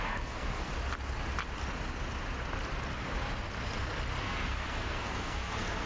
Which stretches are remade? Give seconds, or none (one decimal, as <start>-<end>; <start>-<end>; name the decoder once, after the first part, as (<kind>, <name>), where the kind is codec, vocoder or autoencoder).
0.0-0.7 (codec, SNAC); 4.2-5.9